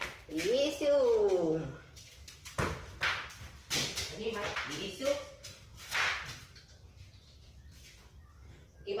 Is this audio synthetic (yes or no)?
no